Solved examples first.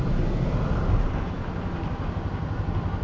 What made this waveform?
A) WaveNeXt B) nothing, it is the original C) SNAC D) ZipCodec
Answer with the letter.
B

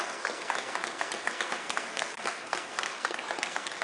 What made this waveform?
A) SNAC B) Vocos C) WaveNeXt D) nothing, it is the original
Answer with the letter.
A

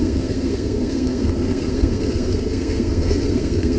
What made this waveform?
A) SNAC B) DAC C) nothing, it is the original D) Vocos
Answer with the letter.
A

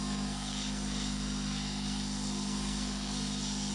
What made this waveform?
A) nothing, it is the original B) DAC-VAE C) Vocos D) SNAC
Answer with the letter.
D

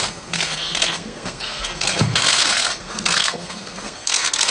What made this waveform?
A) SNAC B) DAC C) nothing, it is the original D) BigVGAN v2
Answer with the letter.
A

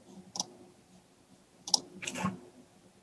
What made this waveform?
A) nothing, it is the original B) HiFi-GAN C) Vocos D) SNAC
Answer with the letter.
A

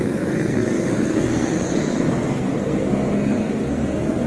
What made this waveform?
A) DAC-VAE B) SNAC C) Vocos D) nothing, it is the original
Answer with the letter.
B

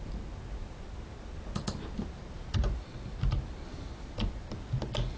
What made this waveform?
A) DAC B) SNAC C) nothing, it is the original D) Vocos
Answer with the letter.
C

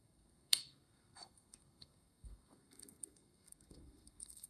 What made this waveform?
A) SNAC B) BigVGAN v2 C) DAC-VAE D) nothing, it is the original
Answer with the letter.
A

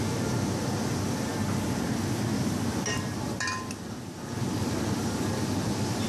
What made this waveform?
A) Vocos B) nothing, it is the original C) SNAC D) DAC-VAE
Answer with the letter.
B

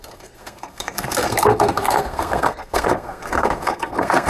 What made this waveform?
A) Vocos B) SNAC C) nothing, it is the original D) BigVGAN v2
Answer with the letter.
B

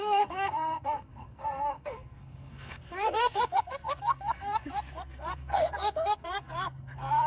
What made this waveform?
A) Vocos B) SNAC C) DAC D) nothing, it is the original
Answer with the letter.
B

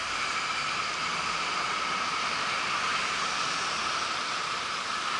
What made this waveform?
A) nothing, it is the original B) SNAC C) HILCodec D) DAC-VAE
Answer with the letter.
A